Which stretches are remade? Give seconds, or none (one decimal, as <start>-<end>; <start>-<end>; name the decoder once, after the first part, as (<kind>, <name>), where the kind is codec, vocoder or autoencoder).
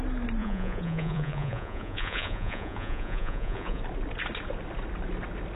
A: 0.4-3.8 (vocoder, Vocos)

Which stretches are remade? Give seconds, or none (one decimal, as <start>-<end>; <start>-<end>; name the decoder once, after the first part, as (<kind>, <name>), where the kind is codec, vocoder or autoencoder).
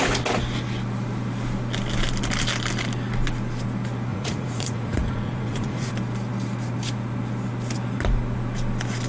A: 4.1-5.9 (vocoder, Vocos)